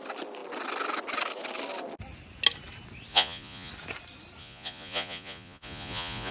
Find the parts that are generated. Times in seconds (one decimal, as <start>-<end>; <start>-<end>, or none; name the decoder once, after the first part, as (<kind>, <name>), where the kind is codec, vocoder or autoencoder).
3.1-3.7 (vocoder, Vocos); 4.4-6.3

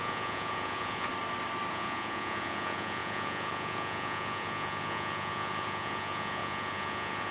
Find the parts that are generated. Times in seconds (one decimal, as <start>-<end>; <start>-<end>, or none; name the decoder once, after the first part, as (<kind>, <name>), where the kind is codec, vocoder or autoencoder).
0.0-1.1 (vocoder, Vocos); 1.7-7.3

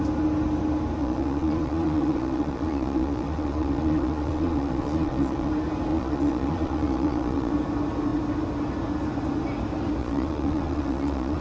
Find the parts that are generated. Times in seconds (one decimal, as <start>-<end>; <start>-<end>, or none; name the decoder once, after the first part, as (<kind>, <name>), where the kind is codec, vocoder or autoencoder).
1.0-5.5 (vocoder, Vocos); 5.9-7.5; 10.0-11.4

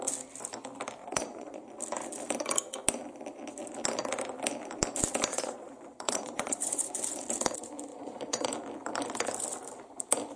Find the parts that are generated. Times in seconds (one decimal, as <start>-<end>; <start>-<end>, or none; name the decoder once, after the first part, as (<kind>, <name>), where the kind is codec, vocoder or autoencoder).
1.0-1.7 (vocoder, Vocos); 5.3-7.0; 7.9-8.5

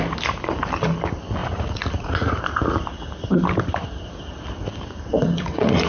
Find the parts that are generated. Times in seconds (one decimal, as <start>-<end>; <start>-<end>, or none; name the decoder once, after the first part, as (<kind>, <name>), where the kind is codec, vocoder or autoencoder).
1.4-2.4 (vocoder, Vocos); 5.1-5.9